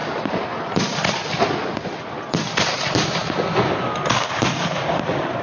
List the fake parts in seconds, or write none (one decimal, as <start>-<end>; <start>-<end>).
none